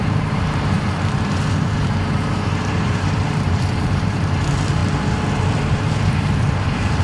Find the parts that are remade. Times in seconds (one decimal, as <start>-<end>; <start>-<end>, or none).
0.0-4.8; 5.6-7.0